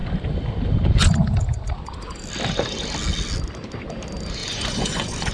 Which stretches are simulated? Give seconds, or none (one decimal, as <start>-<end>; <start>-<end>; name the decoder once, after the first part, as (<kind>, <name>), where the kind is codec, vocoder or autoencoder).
4.4-5.3 (vocoder, Vocos)